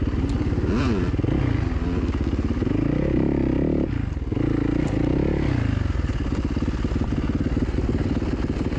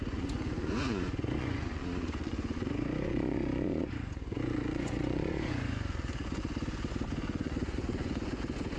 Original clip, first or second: first